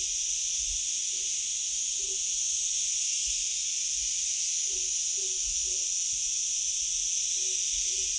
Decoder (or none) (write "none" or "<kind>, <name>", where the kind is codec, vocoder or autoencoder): none